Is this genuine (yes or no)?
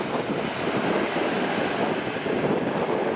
yes